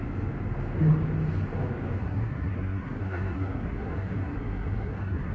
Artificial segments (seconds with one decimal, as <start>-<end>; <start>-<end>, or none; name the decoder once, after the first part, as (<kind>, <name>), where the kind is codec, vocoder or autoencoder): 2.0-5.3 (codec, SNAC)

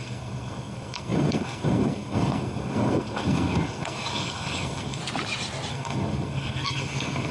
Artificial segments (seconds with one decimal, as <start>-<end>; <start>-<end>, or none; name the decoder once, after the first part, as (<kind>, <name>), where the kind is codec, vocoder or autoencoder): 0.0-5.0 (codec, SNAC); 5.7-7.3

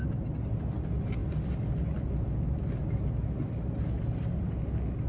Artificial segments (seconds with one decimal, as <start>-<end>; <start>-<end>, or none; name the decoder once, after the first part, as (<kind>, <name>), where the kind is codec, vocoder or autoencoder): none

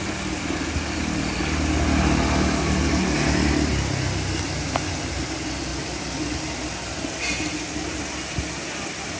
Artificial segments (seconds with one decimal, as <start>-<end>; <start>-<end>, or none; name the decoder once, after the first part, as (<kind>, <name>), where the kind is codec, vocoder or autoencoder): none

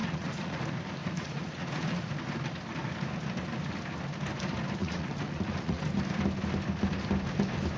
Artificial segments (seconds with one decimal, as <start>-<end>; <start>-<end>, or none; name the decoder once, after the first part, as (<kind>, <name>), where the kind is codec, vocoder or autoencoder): 0.0-0.6 (vocoder, Vocos); 1.0-2.1; 4.8-5.8

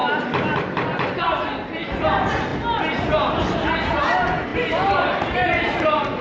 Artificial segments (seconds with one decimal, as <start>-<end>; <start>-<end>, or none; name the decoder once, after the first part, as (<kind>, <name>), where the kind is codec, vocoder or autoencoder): 0.0-1.5 (vocoder, BigVGAN v2); 4.5-6.2